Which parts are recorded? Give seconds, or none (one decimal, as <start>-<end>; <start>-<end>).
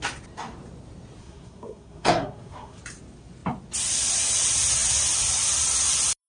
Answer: 0.0-1.2; 2.8-6.3